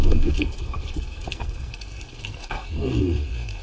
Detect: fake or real fake